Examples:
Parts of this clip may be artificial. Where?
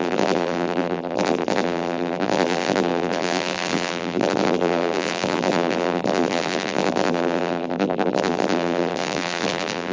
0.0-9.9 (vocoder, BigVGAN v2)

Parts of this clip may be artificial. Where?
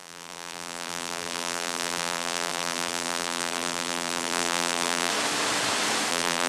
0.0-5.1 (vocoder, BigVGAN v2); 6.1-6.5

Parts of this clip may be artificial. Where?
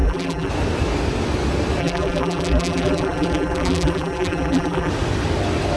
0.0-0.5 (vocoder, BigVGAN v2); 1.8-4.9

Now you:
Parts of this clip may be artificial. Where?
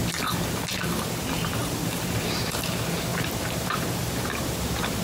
1.6-2.4 (vocoder, BigVGAN v2); 3.1-5.0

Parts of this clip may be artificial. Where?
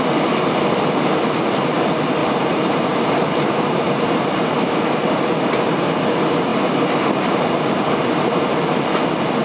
2.2-3.8 (vocoder, BigVGAN v2); 6.5-8.4